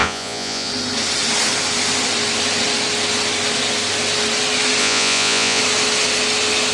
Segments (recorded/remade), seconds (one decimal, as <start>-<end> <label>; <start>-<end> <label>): 0.0-0.7 remade; 0.7-4.8 recorded; 4.8-5.6 remade; 5.6-6.7 recorded